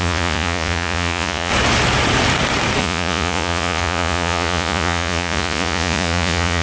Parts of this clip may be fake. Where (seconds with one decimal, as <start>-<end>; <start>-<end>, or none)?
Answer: 0.0-1.5; 2.8-6.6

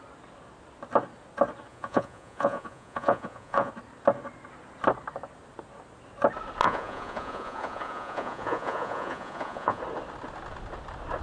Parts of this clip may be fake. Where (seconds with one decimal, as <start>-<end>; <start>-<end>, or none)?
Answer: 1.7-3.7; 6.6-9.8

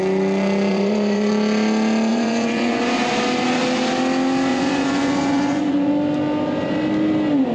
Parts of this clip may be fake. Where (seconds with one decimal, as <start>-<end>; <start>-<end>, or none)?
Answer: 0.7-1.3; 2.1-2.8; 4.5-5.9

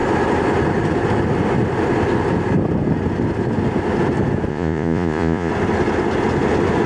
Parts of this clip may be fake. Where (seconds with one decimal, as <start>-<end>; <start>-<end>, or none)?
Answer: 4.5-5.5

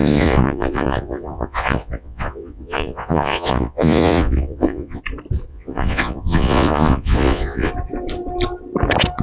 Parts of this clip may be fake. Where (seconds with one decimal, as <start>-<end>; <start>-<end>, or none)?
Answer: 0.0-5.0; 5.5-7.7